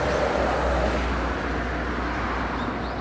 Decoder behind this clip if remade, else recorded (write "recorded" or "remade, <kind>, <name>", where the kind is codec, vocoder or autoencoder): recorded